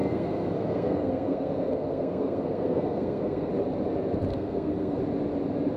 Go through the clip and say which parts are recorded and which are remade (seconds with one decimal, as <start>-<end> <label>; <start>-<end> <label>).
0.0-3.5 remade; 3.5-4.3 recorded; 4.3-5.0 remade; 5.0-5.8 recorded